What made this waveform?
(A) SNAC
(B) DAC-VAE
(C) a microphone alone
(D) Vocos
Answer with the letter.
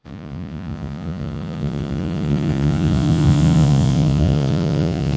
D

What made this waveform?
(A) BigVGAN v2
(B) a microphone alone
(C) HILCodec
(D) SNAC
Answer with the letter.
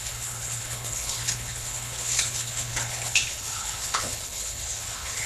C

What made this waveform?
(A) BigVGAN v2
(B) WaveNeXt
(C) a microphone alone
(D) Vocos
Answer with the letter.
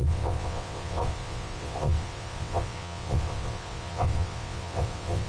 B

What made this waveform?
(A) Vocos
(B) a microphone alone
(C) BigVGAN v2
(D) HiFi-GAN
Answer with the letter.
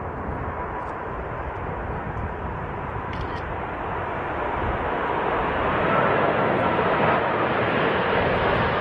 B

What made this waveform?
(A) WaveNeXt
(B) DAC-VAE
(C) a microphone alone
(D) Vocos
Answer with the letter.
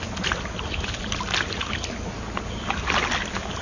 C